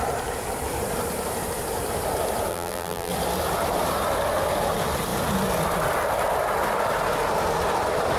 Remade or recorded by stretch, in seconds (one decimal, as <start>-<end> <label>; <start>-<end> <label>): 0.0-2.5 recorded; 2.5-3.1 remade; 3.1-8.2 recorded